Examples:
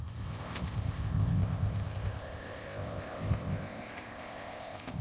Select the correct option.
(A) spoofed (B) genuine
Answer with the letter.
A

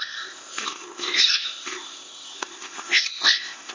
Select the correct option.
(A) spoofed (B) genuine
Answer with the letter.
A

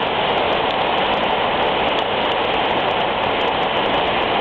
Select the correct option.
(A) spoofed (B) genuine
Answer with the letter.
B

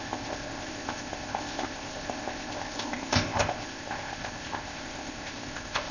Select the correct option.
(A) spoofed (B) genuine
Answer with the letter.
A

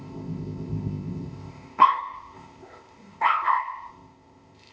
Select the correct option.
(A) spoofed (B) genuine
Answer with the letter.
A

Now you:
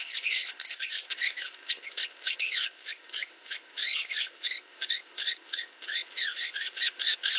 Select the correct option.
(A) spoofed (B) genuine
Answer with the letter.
A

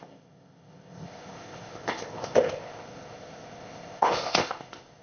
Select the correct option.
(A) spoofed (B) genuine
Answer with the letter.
A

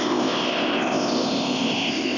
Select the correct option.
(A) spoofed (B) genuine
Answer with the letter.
A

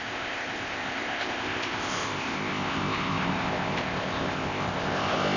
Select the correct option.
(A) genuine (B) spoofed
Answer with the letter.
B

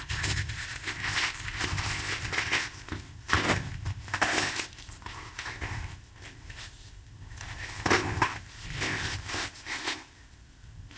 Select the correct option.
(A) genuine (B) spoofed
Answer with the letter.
B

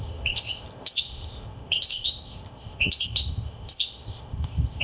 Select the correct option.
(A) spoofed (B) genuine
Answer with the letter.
A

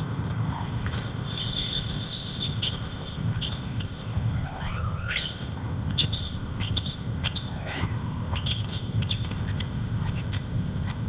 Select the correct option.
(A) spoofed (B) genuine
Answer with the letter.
A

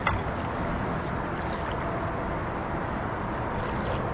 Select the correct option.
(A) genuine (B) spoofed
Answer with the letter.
A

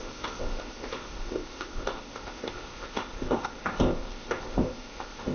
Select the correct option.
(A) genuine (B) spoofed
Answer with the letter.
B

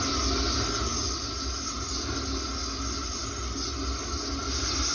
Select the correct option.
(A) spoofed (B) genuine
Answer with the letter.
B